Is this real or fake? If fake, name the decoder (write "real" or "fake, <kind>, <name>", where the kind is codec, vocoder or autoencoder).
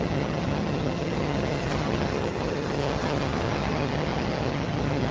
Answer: fake, vocoder, HiFi-GAN